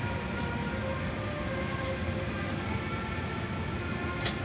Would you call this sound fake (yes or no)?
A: no